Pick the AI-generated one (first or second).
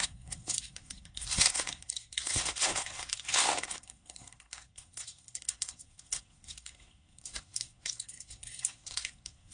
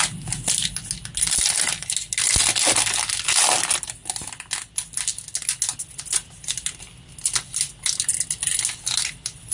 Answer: first